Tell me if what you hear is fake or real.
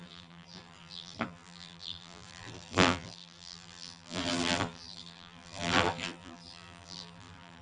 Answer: fake